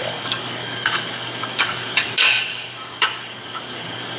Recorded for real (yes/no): no